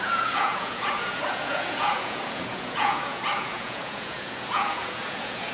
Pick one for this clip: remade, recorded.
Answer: remade